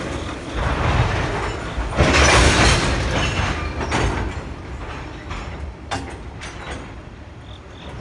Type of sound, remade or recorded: recorded